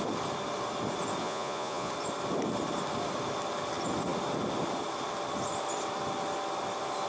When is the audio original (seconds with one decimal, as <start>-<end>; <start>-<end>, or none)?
0.0-1.2; 1.9-7.1